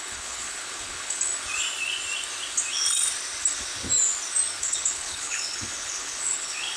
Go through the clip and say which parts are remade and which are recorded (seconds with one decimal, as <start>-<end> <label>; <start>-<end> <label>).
0.0-1.3 remade; 1.3-4.6 recorded; 4.6-6.8 remade